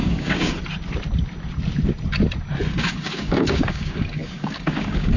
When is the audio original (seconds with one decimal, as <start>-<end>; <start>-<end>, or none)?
0.6-2.7